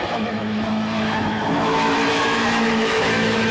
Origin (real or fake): fake